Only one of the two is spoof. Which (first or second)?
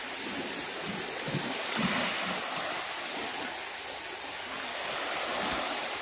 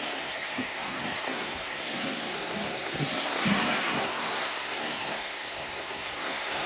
second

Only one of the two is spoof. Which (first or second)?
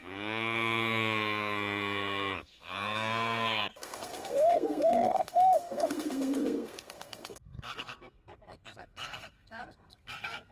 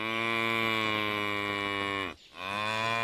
first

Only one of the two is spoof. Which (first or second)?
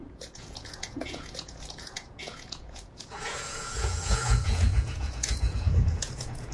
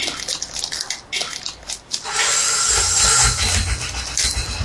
first